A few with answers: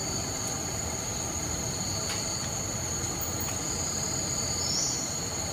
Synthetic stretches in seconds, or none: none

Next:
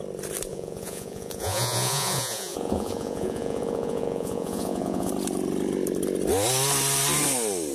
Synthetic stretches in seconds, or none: 0.5-5.1 (vocoder, Vocos)